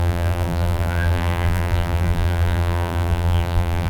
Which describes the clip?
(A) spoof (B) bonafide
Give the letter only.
A